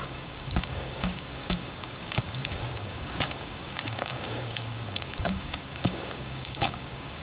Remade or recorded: remade